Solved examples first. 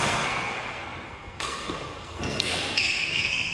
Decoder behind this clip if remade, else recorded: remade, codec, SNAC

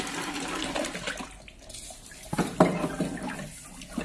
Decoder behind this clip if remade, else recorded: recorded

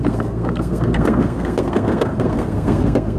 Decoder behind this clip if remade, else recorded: remade, codec, SNAC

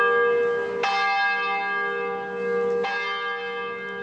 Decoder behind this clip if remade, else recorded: recorded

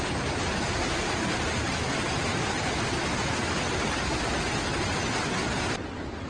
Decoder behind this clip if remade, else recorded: recorded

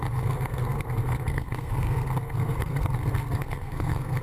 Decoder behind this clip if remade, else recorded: remade, codec, SNAC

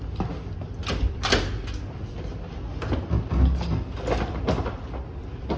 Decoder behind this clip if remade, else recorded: recorded